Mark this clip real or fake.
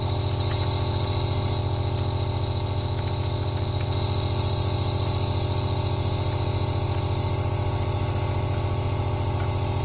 real